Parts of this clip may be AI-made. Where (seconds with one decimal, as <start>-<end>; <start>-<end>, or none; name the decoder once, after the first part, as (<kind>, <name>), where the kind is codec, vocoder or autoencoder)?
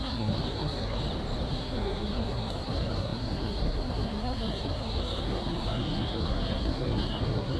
0.0-1.0 (codec, SNAC); 1.5-7.6